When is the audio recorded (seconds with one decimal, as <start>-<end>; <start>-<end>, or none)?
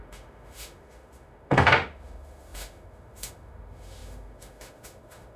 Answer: none